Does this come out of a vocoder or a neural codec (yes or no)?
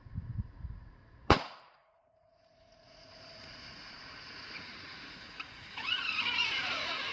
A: yes